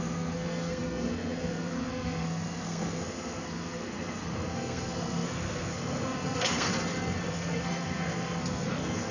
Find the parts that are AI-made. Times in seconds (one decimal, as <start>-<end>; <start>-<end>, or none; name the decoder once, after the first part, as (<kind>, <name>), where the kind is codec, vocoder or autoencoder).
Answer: 0.0-6.7 (codec, SNAC); 7.3-9.1